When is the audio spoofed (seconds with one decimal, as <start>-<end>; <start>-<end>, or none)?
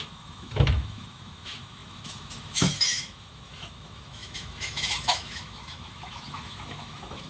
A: 0.0-7.3